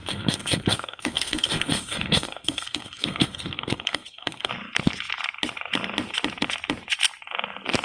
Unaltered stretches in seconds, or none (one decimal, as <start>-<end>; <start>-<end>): 4.5-7.8